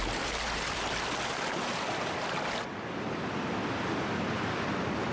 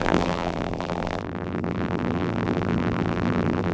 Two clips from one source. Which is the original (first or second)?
first